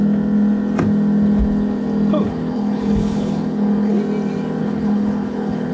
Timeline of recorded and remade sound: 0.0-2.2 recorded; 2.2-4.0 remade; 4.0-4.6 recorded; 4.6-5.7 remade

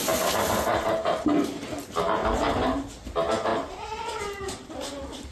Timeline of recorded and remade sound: 0.0-3.5 recorded; 3.5-4.2 remade; 4.2-5.3 recorded

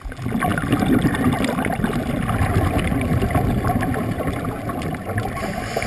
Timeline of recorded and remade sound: 0.0-5.9 recorded

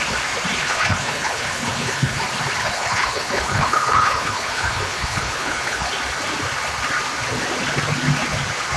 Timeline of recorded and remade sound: 0.0-0.6 recorded; 0.6-2.2 remade; 2.2-2.6 recorded; 2.6-5.9 remade; 5.9-8.8 recorded

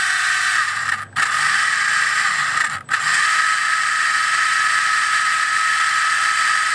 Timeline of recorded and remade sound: 0.0-3.6 recorded; 3.6-6.7 remade